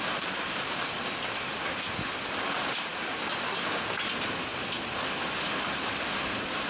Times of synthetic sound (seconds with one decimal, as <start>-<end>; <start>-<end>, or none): none